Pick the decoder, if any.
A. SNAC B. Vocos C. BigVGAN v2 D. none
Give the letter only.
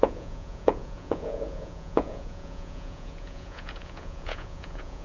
B